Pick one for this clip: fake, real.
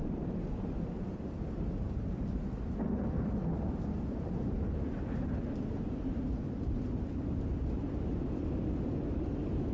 real